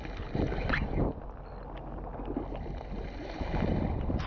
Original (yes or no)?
yes